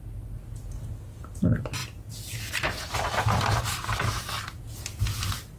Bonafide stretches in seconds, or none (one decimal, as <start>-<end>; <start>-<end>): 0.0-5.6

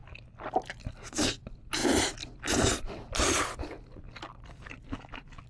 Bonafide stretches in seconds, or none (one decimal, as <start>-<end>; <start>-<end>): 0.0-5.5